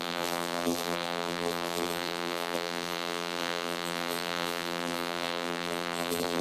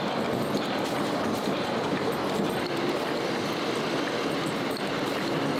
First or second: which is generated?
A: first